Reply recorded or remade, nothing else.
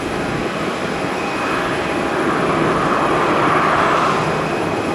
remade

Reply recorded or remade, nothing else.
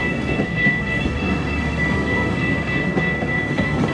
remade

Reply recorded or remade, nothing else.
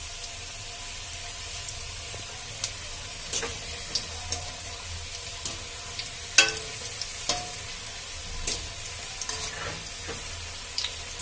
recorded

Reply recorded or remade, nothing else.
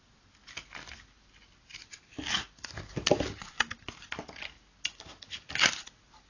recorded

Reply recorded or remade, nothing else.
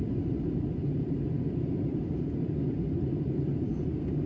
remade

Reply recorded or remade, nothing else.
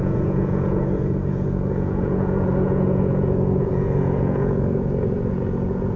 remade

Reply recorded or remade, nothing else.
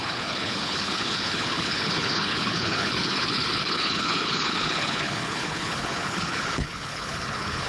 remade